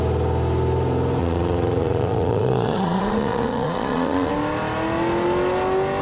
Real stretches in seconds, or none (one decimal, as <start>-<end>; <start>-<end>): 0.0-1.2; 4.3-6.0